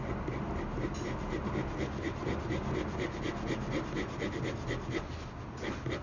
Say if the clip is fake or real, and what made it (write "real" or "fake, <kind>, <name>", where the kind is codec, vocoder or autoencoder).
real